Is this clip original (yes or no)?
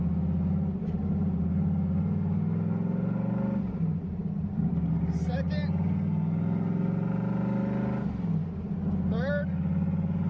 yes